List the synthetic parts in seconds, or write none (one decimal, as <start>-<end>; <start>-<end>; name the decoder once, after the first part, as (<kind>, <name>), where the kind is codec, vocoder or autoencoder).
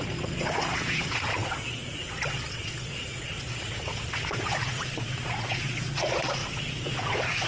0.0-7.5 (vocoder, Vocos)